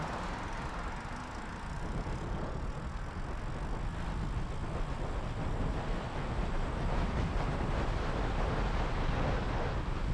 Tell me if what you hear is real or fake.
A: real